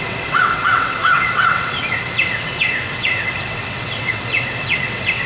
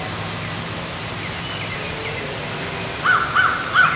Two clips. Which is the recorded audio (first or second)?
second